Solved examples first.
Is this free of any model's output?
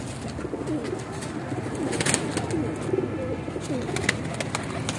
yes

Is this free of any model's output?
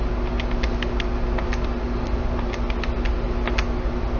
yes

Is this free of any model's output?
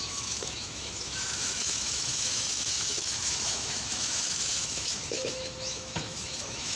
no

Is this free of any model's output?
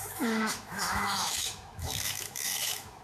no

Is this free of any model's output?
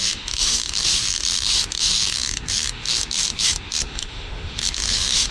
no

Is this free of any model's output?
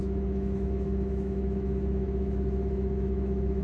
no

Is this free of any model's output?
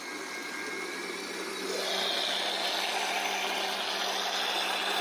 yes